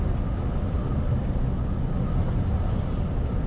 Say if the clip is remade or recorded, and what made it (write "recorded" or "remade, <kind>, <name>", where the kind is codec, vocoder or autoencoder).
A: recorded